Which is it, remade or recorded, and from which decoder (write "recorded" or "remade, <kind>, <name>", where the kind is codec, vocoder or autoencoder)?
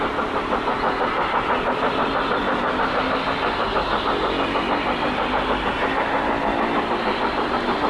recorded